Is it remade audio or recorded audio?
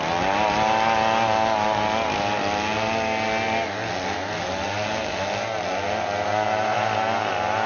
recorded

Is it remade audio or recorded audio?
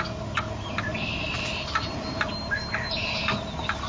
recorded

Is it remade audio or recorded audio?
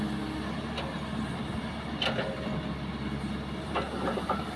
recorded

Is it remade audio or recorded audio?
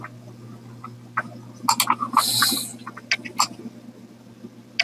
recorded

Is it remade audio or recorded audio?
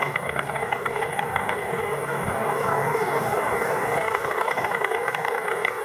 remade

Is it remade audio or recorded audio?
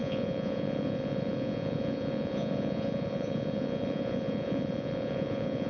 remade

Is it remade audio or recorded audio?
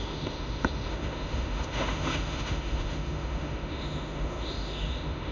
remade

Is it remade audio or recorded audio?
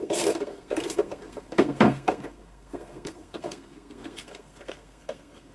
remade